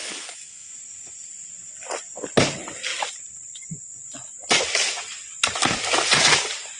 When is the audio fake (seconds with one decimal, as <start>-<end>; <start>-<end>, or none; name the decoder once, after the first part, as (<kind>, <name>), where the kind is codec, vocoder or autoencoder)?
0.0-0.7 (autoencoder, DAC-VAE)

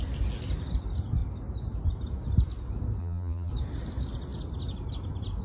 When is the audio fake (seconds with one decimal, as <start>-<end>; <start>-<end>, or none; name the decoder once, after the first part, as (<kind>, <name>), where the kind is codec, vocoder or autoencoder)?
3.0-3.5 (vocoder, BigVGAN v2)